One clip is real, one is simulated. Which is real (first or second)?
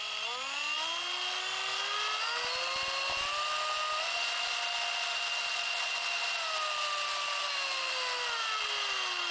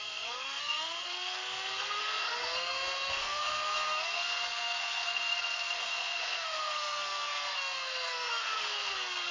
first